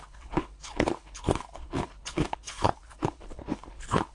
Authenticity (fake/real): fake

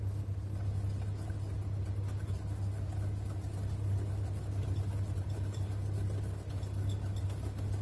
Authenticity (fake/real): real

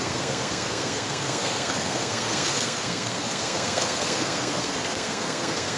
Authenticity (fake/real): fake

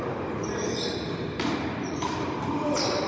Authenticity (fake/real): fake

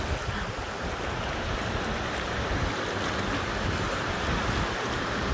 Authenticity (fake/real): real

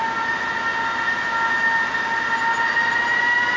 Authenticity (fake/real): real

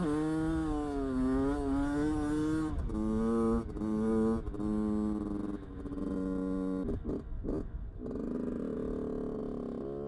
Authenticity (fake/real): real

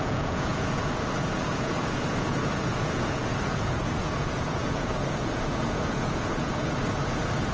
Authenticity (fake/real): fake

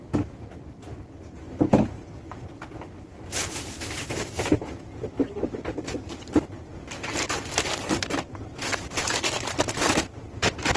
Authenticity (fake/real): real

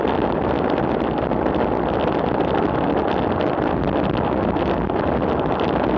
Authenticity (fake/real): real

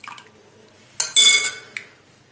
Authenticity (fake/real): real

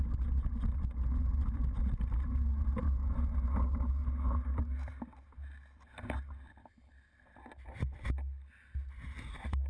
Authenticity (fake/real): real